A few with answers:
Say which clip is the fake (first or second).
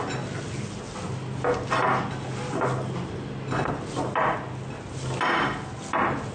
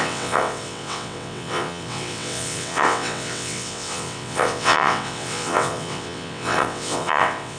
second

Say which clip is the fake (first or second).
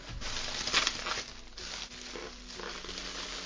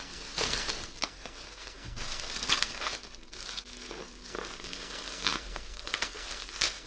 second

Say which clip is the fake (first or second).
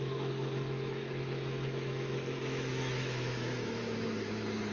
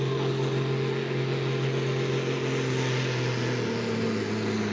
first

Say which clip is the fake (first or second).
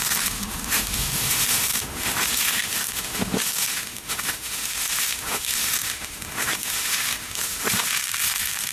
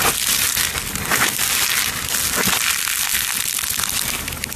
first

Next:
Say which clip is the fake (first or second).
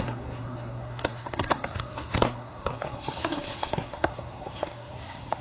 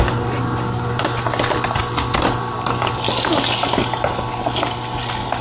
first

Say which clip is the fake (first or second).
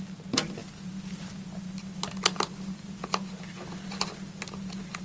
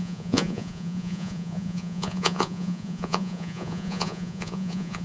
second